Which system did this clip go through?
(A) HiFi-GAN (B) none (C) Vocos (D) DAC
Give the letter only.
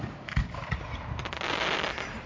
B